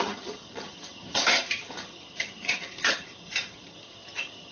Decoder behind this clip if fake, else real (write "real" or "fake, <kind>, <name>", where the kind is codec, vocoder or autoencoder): fake, vocoder, HiFi-GAN